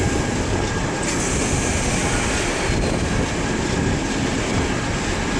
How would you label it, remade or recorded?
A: recorded